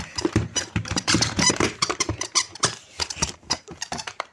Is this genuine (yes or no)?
no